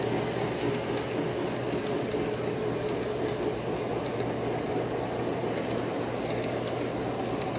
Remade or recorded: recorded